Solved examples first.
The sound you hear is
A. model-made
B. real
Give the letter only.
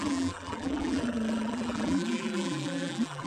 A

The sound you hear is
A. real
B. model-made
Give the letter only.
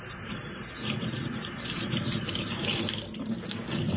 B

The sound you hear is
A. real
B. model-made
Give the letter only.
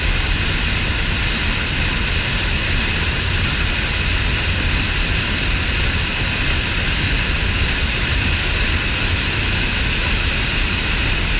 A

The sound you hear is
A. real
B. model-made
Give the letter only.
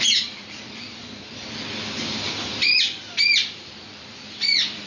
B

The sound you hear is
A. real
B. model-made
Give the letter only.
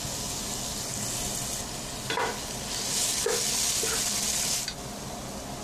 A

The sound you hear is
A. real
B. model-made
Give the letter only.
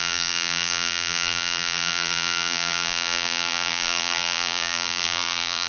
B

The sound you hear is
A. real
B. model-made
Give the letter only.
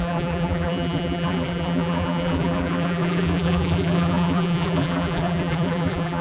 B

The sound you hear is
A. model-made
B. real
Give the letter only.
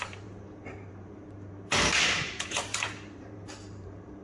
A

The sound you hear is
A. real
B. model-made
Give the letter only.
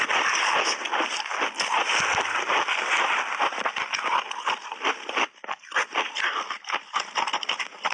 A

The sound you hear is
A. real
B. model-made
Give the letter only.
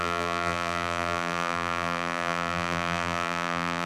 B